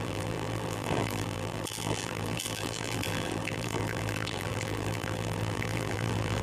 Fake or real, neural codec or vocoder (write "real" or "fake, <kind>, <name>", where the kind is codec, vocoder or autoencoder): fake, vocoder, BigVGAN v2